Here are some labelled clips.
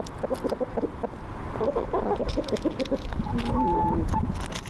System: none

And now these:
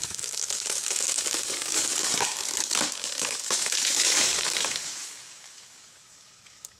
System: codec, DAC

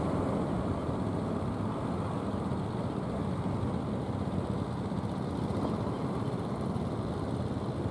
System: none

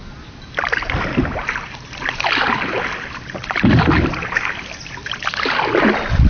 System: none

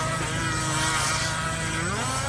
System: none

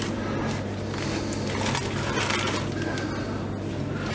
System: none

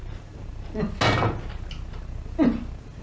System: none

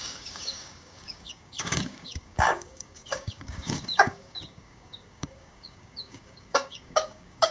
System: codec, DAC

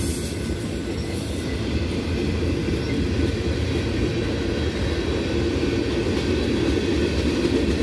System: none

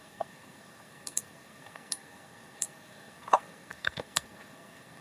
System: codec, SNAC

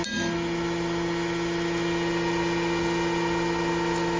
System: none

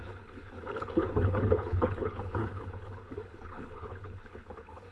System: codec, HILCodec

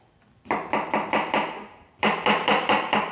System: none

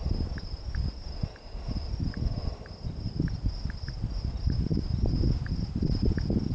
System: none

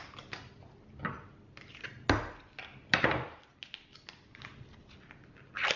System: none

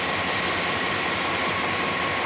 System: none